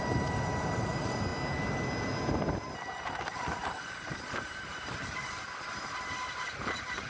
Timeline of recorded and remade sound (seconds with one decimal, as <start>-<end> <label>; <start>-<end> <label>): 0.0-1.3 remade; 1.3-2.5 recorded; 2.5-5.0 remade; 5.0-5.8 recorded; 5.8-7.1 remade